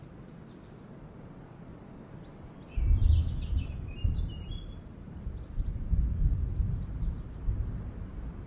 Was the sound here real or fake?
real